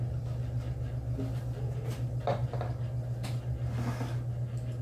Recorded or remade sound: recorded